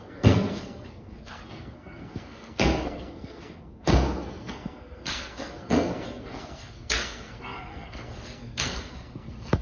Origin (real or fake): fake